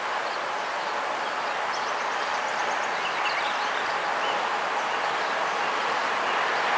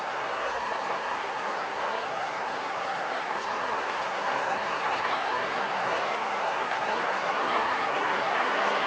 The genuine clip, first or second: first